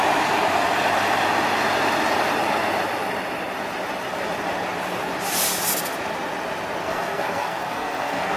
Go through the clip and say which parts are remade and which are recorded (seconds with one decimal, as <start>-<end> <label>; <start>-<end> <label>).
0.0-6.8 recorded; 6.8-8.4 remade